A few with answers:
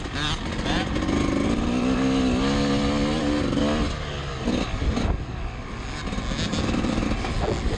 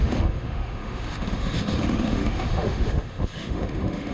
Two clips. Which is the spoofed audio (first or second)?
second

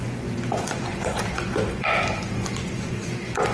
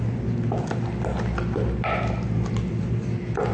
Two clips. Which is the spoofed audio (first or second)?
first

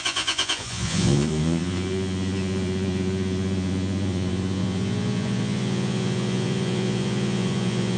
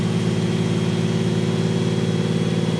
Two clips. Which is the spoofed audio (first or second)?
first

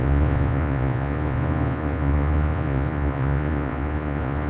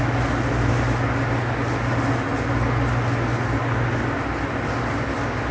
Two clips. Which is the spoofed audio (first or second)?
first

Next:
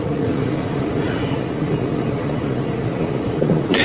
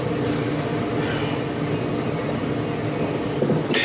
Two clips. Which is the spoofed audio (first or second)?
first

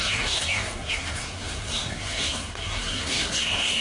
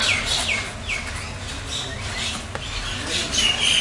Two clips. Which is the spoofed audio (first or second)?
first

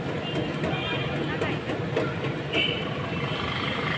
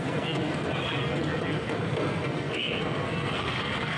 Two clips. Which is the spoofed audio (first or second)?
second